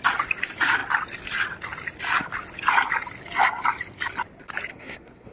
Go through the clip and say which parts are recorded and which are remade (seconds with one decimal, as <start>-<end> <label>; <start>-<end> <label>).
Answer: 0.0-4.7 recorded; 4.7-5.3 remade